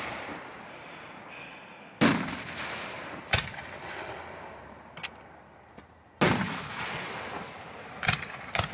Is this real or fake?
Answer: real